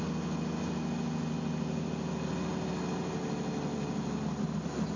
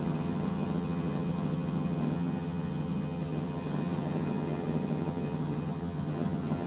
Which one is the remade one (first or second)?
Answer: second